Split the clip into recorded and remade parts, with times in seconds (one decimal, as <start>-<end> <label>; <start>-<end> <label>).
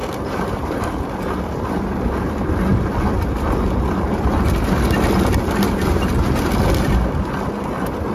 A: 0.0-8.1 recorded